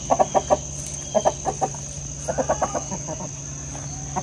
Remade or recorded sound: recorded